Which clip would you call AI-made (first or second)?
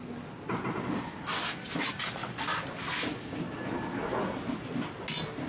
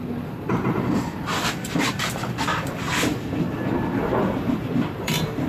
second